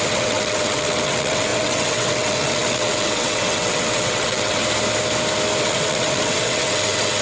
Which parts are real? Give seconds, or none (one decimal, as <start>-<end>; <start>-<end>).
4.6-5.6